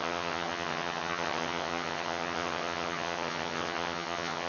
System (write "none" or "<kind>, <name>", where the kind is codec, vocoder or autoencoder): vocoder, HiFi-GAN